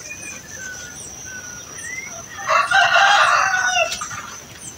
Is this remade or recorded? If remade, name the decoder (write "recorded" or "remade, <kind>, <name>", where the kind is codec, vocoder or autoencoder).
recorded